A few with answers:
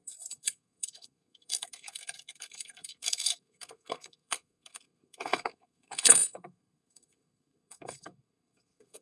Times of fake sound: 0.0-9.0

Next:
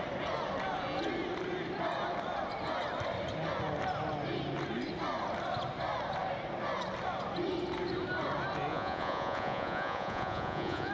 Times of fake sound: 8.7-10.9

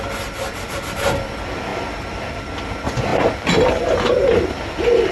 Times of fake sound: none

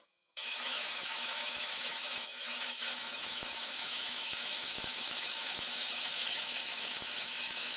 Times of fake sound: 0.0-7.8

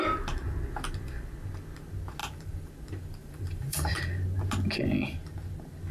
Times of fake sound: 2.2-2.7; 3.2-4.0